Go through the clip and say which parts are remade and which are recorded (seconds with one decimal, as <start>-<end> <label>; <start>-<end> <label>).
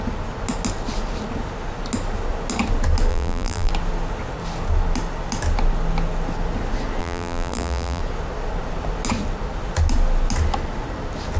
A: 0.0-3.1 recorded; 3.1-3.7 remade; 3.7-7.0 recorded; 7.0-8.0 remade; 8.0-11.4 recorded